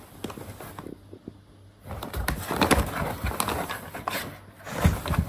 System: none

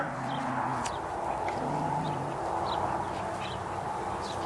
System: none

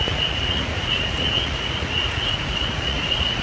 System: vocoder, Vocos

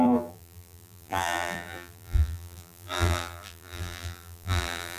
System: vocoder, BigVGAN v2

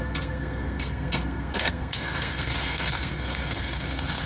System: codec, SNAC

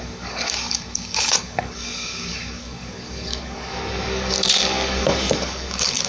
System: codec, DAC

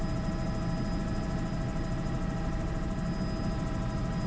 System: none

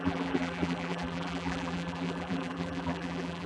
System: vocoder, BigVGAN v2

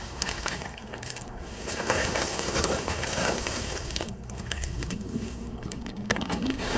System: codec, SNAC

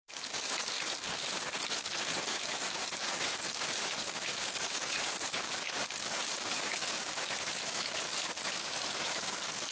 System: codec, DAC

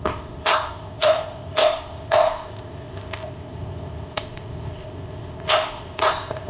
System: codec, ZipCodec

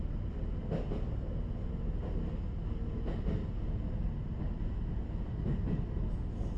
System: none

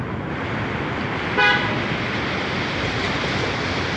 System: none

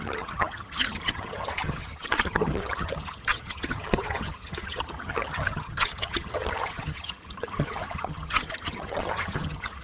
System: vocoder, HiFi-GAN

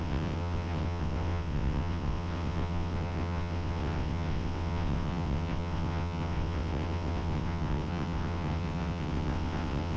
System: vocoder, WaveNeXt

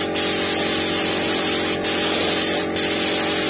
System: none